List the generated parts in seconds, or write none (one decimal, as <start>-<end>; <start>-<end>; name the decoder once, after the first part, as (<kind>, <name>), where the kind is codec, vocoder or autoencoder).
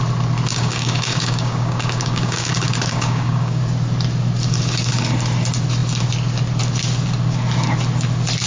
0.5-2.5 (codec, DAC); 2.9-3.6